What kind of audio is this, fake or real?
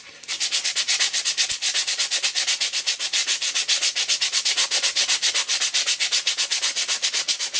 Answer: real